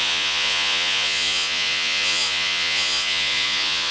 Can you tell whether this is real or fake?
fake